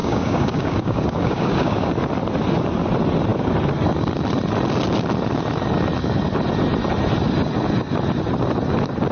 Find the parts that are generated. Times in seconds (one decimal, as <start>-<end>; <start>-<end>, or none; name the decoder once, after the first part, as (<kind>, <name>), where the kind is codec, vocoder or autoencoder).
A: 0.0-1.9 (codec, DAC)